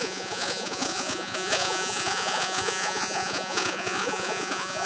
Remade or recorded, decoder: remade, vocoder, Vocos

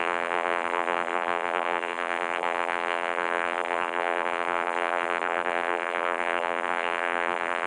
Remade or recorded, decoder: remade, vocoder, BigVGAN v2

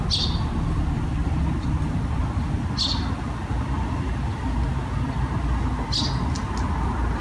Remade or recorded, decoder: recorded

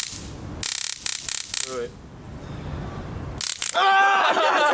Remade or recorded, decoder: recorded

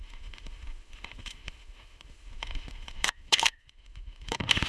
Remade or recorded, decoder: remade, autoencoder, DAC-VAE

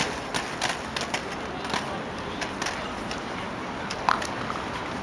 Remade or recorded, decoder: recorded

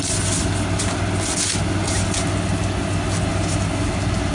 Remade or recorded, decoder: recorded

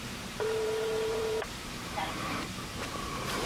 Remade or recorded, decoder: remade, vocoder, BigVGAN v2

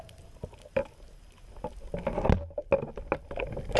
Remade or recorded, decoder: recorded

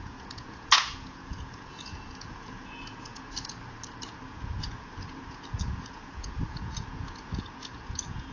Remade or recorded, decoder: remade, vocoder, Vocos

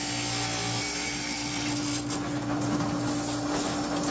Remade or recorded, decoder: recorded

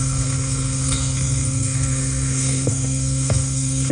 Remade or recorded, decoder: remade, codec, SNAC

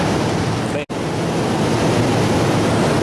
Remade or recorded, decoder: recorded